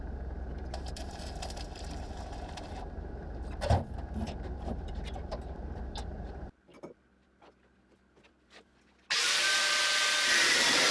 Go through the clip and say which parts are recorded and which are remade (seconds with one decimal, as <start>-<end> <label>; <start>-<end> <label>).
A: 0.0-6.7 remade; 6.7-9.2 recorded; 9.2-10.9 remade